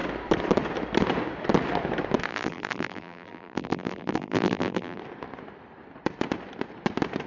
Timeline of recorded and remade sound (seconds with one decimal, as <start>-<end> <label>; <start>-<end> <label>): 0.0-2.3 recorded; 2.3-5.0 remade; 5.0-7.3 recorded